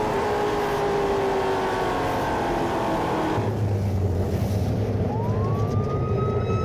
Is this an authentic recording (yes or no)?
yes